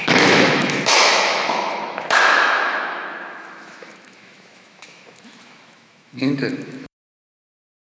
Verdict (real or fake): fake